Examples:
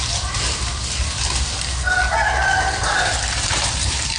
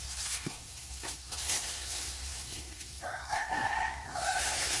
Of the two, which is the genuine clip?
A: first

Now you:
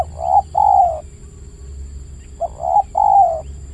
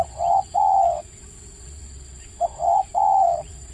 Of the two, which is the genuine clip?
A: first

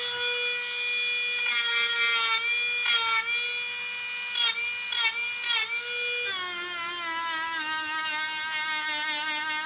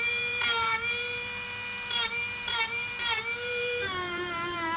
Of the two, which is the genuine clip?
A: first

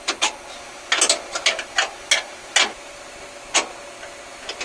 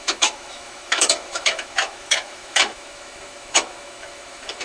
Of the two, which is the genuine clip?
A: first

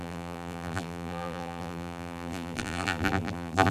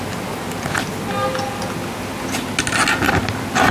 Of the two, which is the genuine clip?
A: second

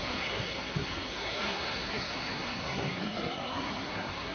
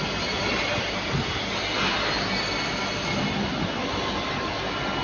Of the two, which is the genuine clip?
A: second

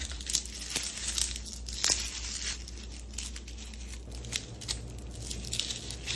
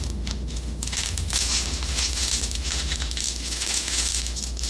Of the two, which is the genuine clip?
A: first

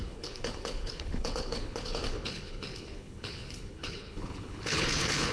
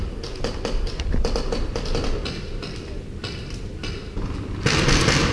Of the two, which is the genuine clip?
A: second